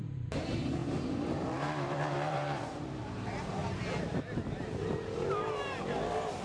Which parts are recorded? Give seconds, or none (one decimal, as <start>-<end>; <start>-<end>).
3.6-5.5